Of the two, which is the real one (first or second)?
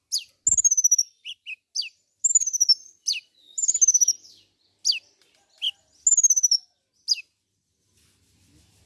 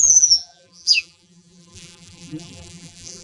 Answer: first